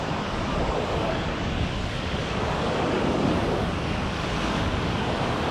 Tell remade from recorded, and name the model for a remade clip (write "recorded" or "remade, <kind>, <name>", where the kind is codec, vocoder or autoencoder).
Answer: remade, codec, DAC